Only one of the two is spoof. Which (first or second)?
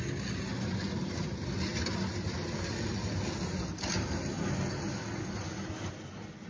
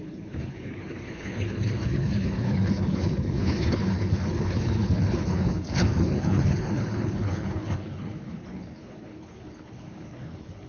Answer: second